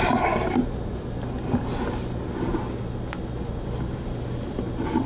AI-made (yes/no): no